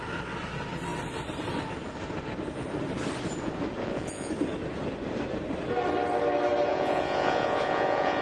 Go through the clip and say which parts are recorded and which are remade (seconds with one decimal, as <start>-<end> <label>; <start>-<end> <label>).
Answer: 0.0-3.8 recorded; 3.8-4.3 remade; 4.3-6.7 recorded; 6.7-8.2 remade